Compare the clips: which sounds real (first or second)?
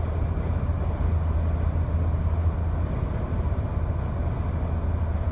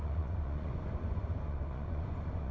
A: first